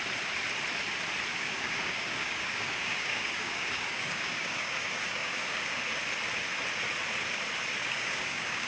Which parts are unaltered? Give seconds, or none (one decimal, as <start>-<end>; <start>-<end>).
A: 0.0-1.3; 5.8-7.8